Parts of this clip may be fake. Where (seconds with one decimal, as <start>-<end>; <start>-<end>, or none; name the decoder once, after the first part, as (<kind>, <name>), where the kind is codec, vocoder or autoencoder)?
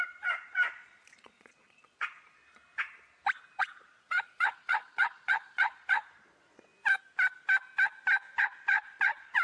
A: 0.0-2.4 (vocoder, Vocos); 3.6-6.7; 8.4-9.4